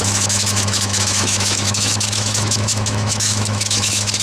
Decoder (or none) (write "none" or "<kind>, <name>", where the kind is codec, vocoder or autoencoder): autoencoder, DAC-VAE